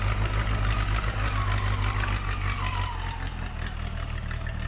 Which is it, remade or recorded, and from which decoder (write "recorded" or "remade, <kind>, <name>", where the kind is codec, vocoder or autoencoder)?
recorded